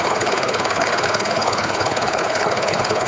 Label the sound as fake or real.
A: fake